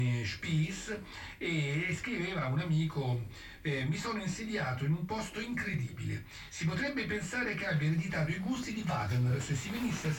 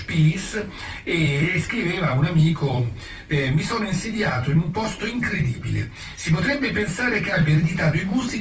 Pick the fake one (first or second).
second